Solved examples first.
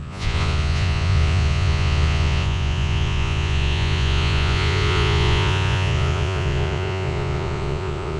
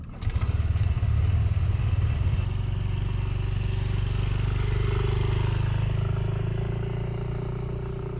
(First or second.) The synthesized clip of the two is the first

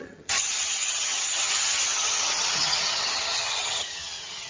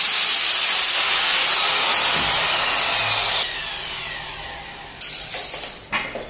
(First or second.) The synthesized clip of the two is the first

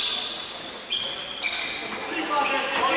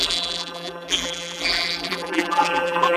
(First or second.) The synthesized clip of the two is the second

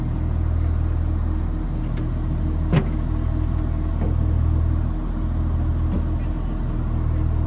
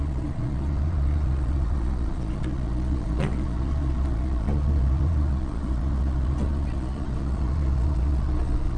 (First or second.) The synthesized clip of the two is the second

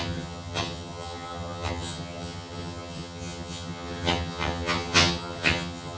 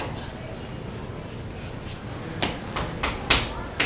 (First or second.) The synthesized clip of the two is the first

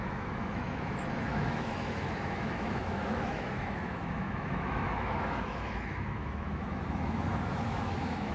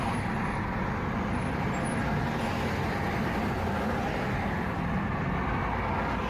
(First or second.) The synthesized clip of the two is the first